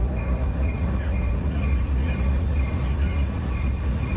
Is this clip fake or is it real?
fake